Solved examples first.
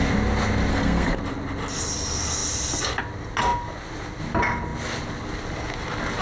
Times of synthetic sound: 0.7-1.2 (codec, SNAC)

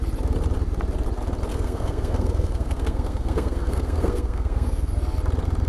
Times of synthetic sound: 1.5-4.9 (codec, SNAC)

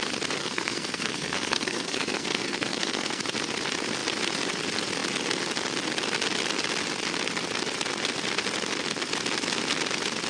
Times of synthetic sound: 0.4-3.2 (codec, SNAC)

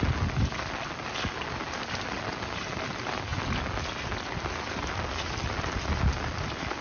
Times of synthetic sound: none